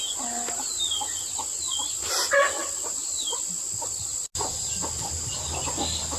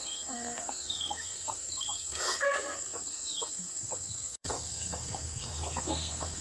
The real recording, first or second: first